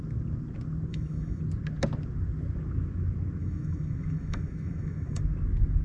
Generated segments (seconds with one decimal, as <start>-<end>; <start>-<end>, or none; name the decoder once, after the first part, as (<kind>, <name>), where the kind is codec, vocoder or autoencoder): 0.9-1.4 (autoencoder, DAC-VAE); 3.4-5.2